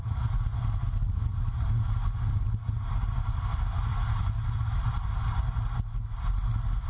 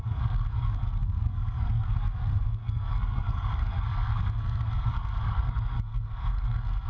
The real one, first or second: first